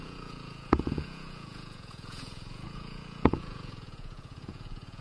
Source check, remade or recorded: remade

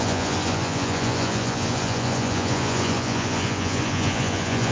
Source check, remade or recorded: remade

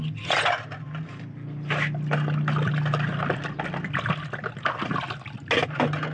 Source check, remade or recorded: recorded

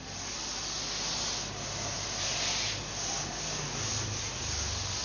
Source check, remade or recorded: recorded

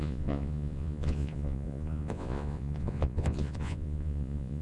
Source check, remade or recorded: remade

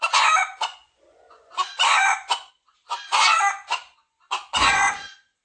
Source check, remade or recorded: remade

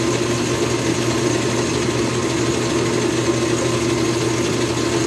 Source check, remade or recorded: recorded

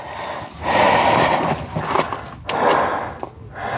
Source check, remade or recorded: recorded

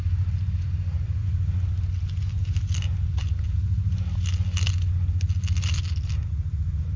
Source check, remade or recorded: recorded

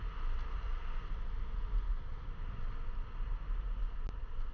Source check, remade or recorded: recorded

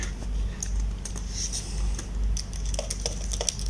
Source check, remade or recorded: recorded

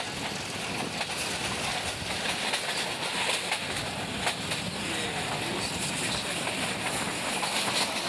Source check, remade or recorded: recorded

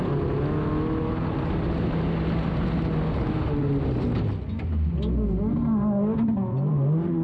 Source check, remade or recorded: recorded